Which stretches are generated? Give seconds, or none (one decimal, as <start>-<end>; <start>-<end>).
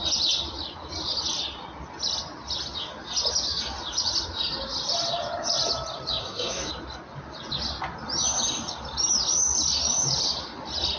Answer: 6.2-6.7